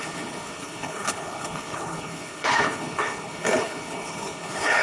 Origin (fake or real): fake